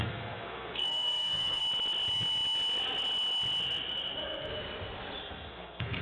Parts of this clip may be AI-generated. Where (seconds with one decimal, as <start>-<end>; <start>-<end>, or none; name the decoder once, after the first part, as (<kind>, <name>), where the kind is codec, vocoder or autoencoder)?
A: 0.0-1.6 (codec, SNAC); 5.2-6.0

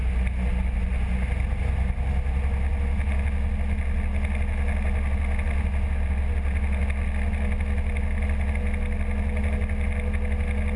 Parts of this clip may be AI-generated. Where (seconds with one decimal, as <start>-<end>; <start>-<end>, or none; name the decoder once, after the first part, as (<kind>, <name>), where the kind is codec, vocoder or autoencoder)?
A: none

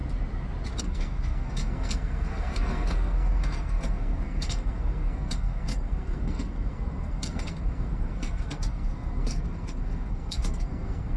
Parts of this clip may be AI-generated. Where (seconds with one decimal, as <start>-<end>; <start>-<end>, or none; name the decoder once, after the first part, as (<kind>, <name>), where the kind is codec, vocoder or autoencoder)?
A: 0.8-11.2 (codec, SNAC)

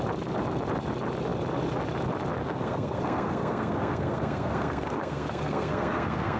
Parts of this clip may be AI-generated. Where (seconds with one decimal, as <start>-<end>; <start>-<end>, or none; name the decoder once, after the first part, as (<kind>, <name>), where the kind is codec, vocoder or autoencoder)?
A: 2.4-6.4 (codec, SNAC)

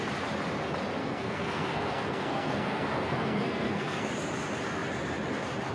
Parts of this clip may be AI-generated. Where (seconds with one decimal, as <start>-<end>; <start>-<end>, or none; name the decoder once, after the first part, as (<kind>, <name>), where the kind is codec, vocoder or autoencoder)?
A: 1.0-4.1 (codec, SNAC)

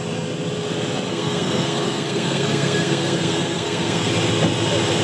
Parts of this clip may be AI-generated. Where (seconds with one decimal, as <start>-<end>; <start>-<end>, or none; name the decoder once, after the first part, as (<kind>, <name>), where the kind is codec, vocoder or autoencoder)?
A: 1.1-4.1 (codec, SNAC)

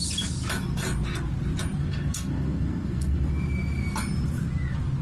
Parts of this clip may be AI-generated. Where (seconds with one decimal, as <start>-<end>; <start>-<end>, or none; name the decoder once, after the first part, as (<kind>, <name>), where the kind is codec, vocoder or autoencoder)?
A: 1.8-3.4 (codec, SNAC)